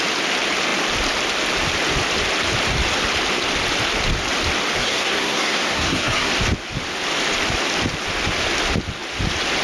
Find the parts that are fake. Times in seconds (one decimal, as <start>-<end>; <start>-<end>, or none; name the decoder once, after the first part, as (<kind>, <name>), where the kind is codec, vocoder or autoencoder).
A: 4.8-6.3 (codec, SNAC)